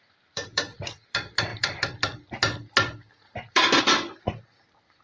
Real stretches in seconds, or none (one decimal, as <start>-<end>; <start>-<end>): none